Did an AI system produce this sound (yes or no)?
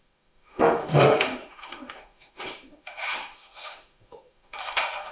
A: yes